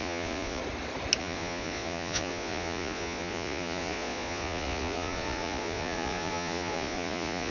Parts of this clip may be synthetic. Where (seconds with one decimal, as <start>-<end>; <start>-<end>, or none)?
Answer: 0.0-0.6; 1.2-7.5